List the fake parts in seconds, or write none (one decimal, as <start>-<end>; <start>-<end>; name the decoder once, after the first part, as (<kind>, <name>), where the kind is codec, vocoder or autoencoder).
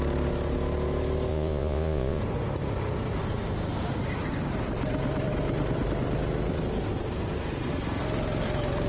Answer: 1.3-2.2 (vocoder, Vocos)